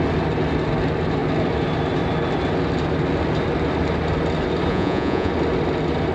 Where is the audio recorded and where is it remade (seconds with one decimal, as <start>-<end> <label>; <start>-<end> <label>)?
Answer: 0.0-4.7 recorded; 4.7-5.3 remade; 5.3-6.1 recorded